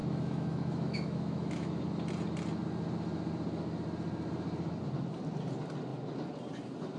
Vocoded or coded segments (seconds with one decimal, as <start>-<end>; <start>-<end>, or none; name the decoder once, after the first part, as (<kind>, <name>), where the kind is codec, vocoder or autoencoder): 0.0-1.8 (autoencoder, DAC-VAE)